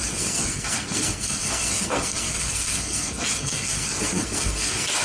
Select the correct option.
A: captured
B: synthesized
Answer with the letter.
B